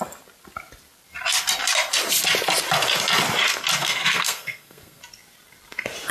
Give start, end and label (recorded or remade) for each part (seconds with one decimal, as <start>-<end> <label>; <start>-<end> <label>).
0.0-3.8 recorded; 3.8-5.0 remade; 5.0-6.1 recorded